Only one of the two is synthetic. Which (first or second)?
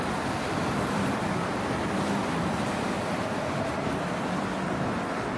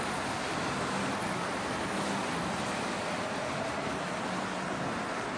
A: first